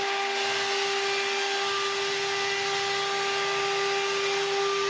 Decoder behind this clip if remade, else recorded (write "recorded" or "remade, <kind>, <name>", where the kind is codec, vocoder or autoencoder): recorded